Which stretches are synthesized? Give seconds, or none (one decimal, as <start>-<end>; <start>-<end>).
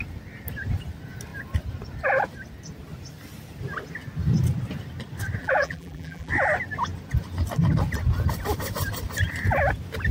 5.4-6.3